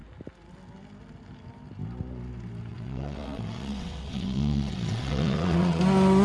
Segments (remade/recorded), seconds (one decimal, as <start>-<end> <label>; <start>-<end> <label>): 0.0-2.7 recorded; 2.7-5.8 remade; 5.8-6.2 recorded